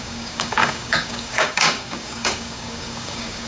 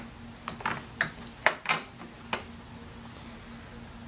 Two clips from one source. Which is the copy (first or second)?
first